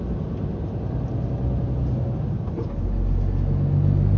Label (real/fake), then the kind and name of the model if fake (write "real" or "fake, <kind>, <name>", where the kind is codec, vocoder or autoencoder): real